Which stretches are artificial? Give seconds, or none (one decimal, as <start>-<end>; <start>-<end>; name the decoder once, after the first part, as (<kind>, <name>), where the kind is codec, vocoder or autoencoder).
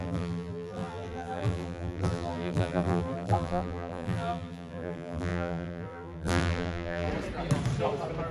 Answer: 0.0-7.1 (vocoder, BigVGAN v2)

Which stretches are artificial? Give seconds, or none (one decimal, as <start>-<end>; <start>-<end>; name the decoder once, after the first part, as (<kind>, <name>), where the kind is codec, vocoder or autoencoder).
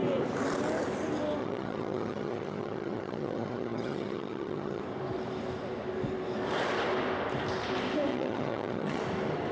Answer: 1.4-4.8 (vocoder, HiFi-GAN); 8.1-9.0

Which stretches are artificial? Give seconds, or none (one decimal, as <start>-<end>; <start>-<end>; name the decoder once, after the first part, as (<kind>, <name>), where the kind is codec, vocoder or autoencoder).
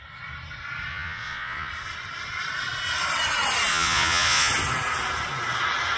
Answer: 0.9-1.7 (vocoder, Vocos); 3.7-4.5